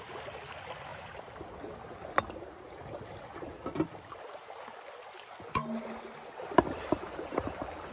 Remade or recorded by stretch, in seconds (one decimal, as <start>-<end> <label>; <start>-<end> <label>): 0.0-7.9 recorded